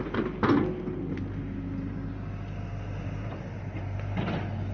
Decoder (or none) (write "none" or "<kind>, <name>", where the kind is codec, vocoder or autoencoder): none